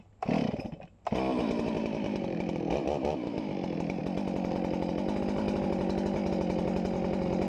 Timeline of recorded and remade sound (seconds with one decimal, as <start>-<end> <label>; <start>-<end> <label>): 0.0-1.3 recorded; 1.3-4.0 remade; 4.0-7.5 recorded